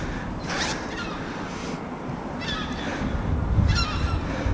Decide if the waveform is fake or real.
real